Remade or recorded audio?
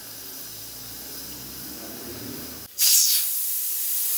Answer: remade